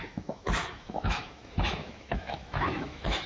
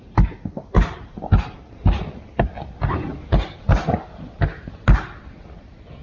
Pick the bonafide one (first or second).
second